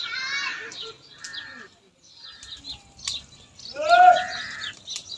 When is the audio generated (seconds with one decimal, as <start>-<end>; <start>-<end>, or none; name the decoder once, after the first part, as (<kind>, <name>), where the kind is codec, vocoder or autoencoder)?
none